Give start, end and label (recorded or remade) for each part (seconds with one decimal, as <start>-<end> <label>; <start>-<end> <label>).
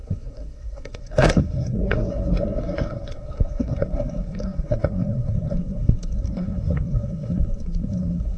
0.0-8.4 remade